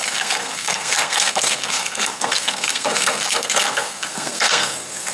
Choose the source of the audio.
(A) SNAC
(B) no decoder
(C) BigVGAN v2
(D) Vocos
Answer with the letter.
A